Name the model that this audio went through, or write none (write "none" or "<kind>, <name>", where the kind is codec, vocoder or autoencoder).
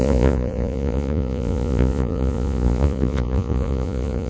vocoder, Vocos